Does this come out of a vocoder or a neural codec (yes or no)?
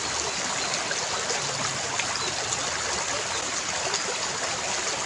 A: no